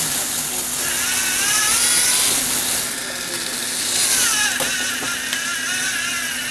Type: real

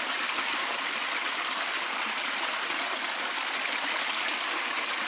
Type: real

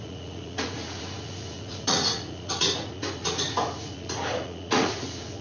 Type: fake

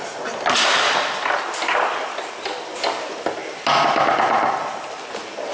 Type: real